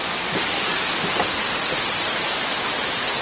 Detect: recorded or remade recorded